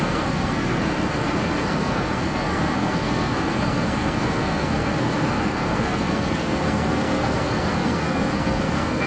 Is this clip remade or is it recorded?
remade